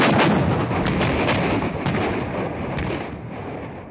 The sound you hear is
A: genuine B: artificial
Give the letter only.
A